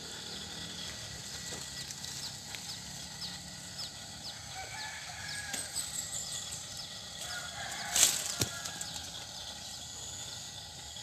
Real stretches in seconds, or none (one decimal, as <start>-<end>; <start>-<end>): 0.0-5.2; 8.0-11.0